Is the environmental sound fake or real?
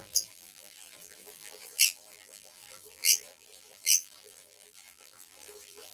fake